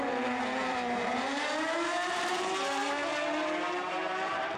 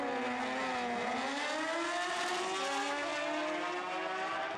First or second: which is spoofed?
first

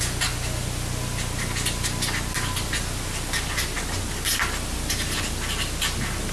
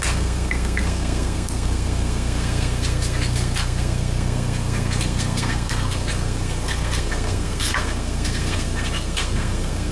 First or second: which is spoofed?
second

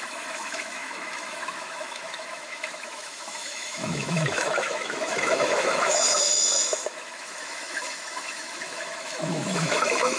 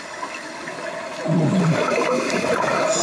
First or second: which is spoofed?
first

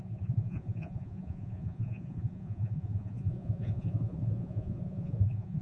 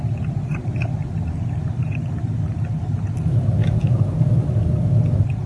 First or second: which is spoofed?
first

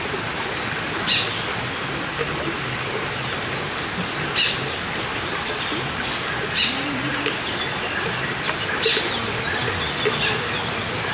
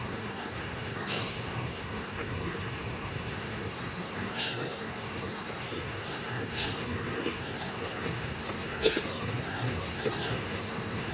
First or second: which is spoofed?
second